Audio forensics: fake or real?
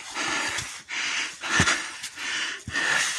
real